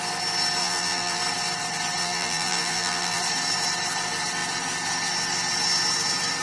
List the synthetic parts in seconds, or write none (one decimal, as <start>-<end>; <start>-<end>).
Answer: 0.6-1.2; 2.0-3.2